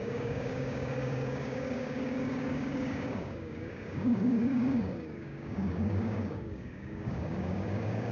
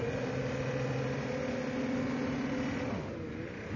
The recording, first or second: second